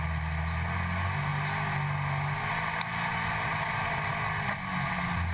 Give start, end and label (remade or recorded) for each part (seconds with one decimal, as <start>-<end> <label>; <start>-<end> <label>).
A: 0.0-5.3 recorded